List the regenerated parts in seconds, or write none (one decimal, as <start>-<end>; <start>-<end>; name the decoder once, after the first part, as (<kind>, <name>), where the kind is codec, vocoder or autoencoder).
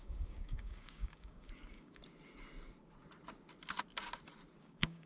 0.0-2.0 (codec, DAC); 4.6-5.1